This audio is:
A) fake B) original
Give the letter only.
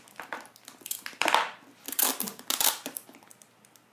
B